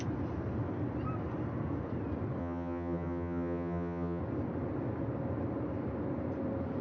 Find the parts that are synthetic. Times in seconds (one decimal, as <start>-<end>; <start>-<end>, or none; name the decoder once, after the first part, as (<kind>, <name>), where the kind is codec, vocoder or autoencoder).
2.4-4.2 (vocoder, HiFi-GAN)